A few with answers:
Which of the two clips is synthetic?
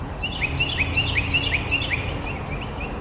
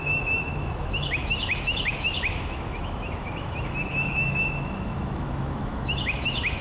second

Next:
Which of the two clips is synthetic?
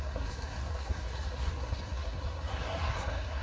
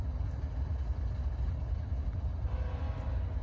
first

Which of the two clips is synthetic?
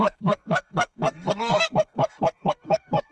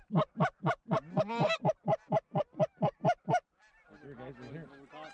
first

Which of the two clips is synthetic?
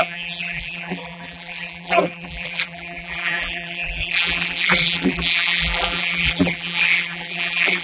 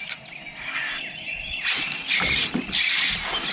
first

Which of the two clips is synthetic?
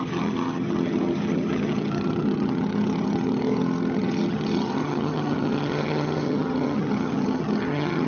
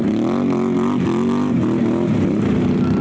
first